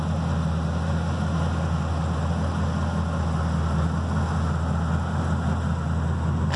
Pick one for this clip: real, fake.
real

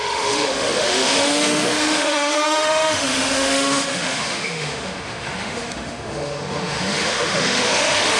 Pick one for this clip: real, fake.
fake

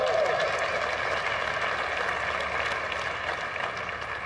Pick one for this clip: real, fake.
real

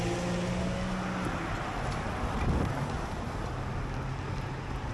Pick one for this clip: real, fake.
real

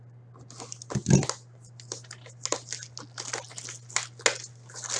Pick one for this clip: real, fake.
real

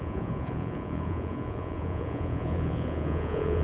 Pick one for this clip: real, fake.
fake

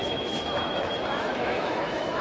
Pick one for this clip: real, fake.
fake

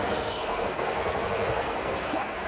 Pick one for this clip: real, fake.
fake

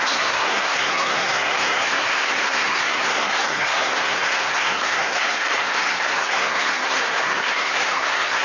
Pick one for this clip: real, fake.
fake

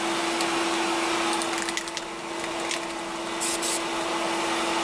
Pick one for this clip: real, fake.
real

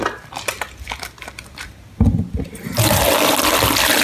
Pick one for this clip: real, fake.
real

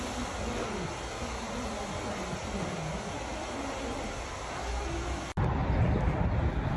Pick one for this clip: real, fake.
real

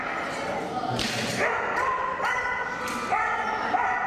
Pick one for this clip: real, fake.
real